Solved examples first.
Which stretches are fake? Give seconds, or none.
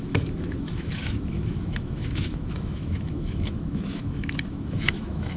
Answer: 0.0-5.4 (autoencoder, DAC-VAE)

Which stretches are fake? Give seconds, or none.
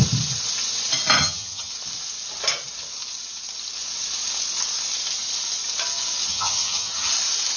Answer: 1.2-1.7 (vocoder, HiFi-GAN); 6.3-7.1